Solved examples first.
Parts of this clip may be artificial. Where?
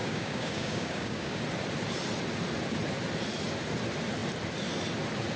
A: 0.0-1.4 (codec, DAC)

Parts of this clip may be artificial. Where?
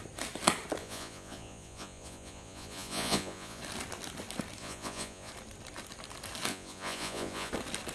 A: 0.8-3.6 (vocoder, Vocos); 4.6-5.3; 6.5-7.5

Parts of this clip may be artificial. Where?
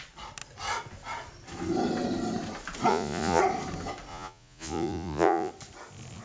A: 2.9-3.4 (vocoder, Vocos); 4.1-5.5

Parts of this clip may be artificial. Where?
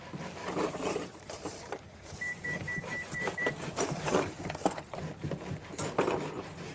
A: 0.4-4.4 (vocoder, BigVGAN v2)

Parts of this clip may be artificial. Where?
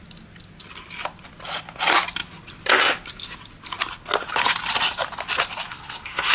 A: 5.7-6.3 (codec, SNAC)